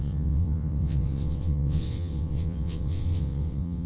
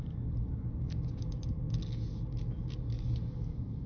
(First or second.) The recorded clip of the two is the second